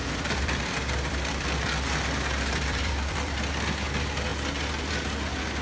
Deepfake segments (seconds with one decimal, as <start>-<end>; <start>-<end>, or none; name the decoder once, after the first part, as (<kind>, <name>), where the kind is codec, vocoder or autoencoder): 0.0-3.4 (vocoder, BigVGAN v2)